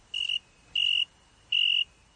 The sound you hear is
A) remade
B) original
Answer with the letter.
B